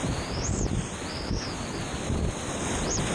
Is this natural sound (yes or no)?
yes